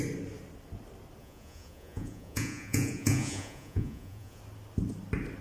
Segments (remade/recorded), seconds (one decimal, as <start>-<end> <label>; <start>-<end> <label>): 0.0-1.2 recorded; 1.2-4.4 remade; 4.4-5.4 recorded